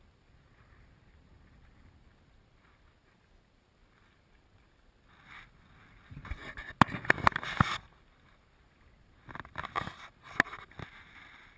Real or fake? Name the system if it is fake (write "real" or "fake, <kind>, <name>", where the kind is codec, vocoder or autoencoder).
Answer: real